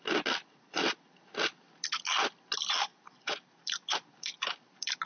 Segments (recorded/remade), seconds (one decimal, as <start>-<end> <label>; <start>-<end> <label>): 0.0-2.9 recorded; 2.9-5.1 remade